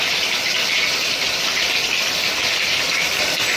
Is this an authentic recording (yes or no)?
yes